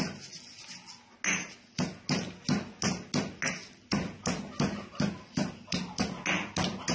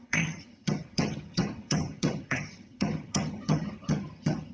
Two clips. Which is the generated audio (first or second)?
second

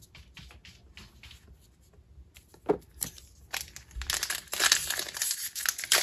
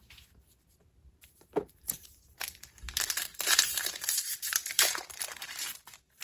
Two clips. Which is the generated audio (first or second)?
second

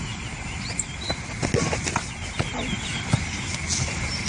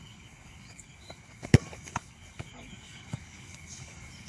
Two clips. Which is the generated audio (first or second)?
second